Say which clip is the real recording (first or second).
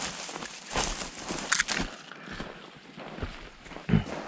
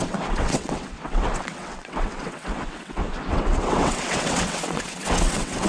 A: first